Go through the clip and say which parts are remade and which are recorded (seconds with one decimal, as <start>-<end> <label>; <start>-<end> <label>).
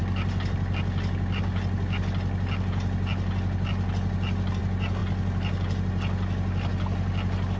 0.0-7.6 recorded